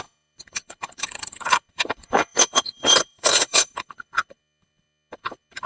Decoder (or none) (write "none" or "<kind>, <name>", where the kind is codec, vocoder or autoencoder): codec, HILCodec